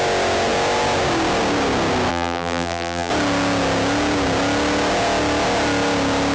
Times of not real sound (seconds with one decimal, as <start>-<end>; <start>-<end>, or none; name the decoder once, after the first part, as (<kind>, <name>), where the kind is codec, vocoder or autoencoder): 2.1-3.1 (vocoder, BigVGAN v2)